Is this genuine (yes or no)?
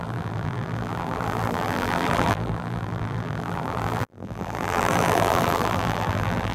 no